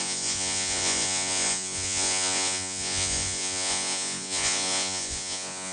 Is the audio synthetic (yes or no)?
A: yes